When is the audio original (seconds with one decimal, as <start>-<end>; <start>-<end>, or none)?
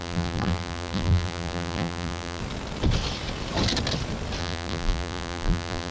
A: 2.4-4.4